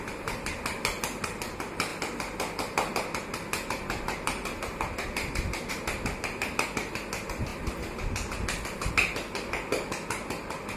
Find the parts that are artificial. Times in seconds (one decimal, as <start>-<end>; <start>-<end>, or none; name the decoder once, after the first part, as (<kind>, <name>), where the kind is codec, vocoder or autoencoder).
none

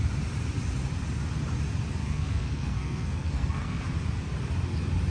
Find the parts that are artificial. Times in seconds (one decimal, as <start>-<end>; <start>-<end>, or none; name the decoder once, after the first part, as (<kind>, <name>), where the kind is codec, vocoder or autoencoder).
2.0-3.8 (codec, SNAC)

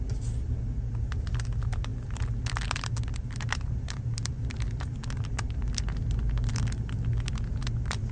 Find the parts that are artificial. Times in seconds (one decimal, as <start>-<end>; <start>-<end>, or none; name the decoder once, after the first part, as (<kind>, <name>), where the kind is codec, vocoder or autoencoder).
none

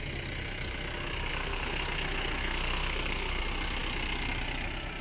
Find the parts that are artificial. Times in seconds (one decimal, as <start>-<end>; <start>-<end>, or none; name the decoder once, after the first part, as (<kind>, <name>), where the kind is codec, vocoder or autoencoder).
1.3-1.8 (codec, SNAC); 2.4-3.4